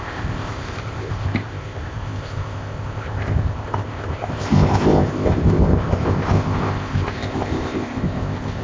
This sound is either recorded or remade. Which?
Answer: remade